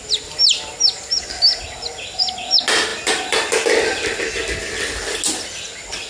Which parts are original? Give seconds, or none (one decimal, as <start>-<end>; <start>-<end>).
0.0-6.1

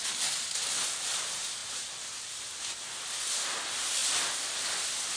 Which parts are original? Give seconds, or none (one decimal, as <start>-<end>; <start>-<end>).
0.0-5.2

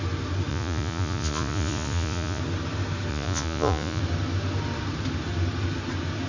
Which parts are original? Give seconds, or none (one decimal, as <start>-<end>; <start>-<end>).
0.0-0.5; 2.4-3.1; 4.0-6.3

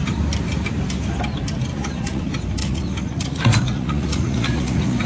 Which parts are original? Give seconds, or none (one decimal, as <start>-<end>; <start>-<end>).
0.0-1.7; 2.2-2.6

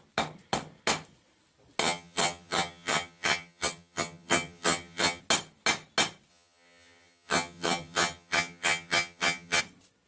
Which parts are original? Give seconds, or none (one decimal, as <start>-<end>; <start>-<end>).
0.0-1.8; 5.2-6.3; 9.6-10.1

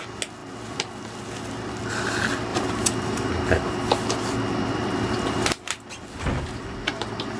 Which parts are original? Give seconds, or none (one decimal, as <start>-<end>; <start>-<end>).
0.0-2.5; 3.3-7.4